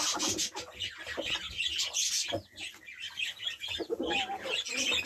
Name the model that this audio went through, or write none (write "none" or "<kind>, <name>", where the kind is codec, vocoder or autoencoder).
none